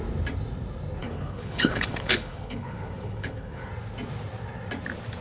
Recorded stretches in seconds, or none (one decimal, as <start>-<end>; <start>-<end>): 0.0-1.0; 3.7-5.2